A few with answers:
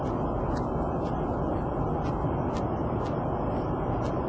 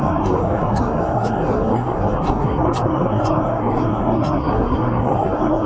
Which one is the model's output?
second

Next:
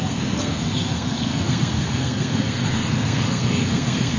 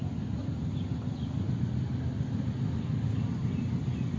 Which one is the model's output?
first